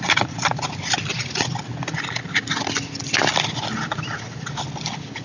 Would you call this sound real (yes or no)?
yes